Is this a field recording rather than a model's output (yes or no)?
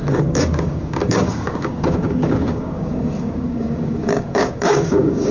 no